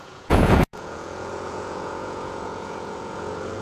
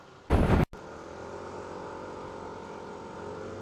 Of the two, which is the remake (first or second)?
first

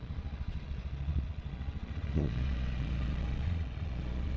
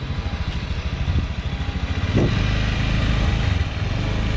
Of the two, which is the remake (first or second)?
first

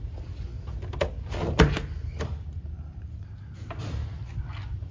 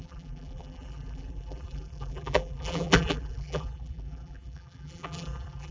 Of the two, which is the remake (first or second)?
second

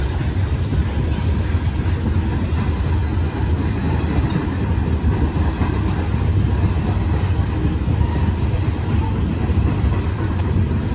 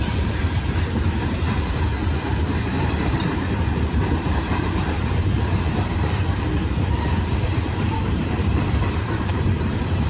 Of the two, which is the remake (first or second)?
second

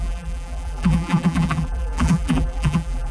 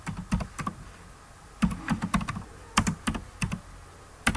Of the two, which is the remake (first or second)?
first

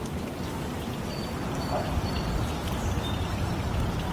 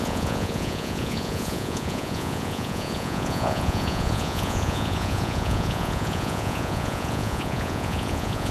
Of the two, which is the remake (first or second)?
second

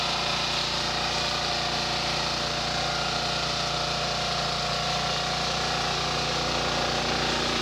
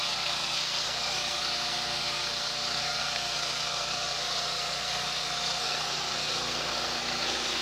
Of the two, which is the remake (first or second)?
second